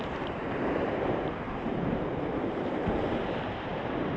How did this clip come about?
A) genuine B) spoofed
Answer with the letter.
B